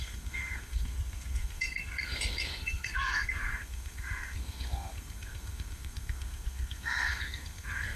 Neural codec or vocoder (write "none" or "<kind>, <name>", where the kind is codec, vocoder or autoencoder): codec, SNAC